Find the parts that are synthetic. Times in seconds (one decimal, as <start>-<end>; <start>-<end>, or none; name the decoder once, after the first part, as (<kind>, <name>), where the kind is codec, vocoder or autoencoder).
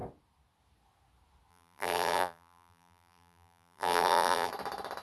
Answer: 1.5-4.5 (vocoder, BigVGAN v2)